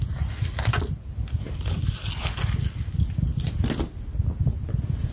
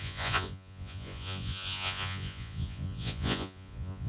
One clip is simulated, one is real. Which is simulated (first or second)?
second